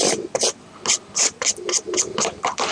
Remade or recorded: recorded